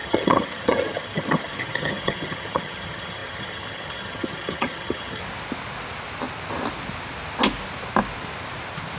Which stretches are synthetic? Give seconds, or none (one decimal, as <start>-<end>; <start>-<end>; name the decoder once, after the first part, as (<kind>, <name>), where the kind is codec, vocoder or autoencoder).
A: 0.0-5.2 (vocoder, HiFi-GAN)